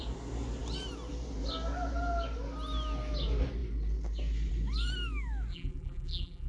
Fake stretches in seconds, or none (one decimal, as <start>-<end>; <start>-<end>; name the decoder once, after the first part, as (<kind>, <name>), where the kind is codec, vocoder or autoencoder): 5.5-6.5 (vocoder, BigVGAN v2)